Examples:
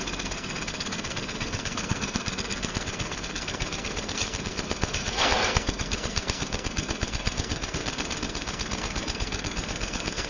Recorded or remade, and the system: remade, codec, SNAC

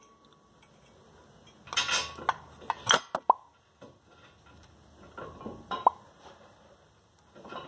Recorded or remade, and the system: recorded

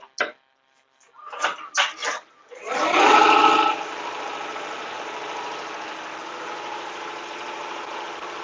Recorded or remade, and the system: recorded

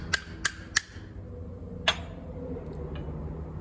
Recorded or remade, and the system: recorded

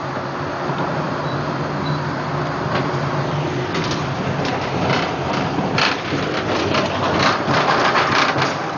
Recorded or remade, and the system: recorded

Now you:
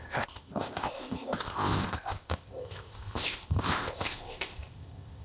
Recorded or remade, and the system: remade, codec, ZipCodec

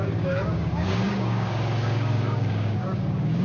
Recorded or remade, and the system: remade, codec, DAC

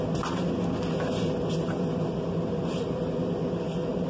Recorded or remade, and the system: recorded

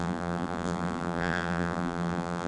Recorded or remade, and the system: remade, vocoder, BigVGAN v2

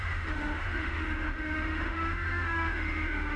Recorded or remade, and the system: remade, autoencoder, DAC-VAE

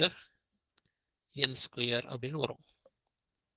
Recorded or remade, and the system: remade, codec, SNAC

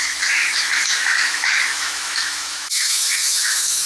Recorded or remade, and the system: remade, autoencoder, DAC-VAE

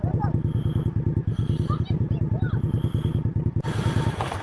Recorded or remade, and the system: recorded